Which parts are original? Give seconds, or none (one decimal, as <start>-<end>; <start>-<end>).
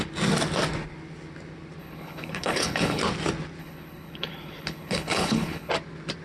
0.0-1.8; 3.0-3.6; 5.7-6.2